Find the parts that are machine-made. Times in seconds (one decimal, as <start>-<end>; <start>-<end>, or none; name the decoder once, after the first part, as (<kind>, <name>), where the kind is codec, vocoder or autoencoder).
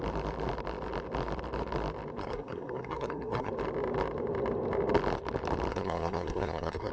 2.2-3.5 (codec, SNAC); 5.7-6.9